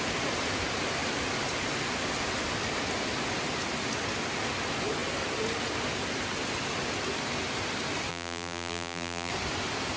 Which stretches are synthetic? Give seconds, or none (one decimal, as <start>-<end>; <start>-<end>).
8.1-9.3